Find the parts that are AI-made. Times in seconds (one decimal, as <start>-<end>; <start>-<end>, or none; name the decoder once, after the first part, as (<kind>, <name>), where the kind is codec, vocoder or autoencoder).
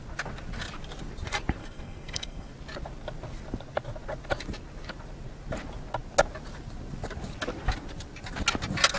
1.6-2.5 (codec, SNAC)